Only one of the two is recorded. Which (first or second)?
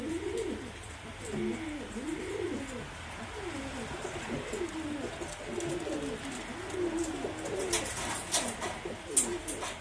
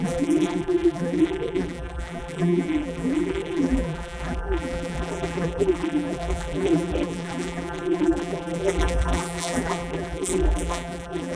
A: first